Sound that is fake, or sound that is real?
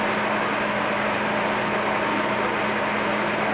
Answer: real